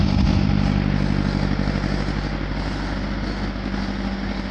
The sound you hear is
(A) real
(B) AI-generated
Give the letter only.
A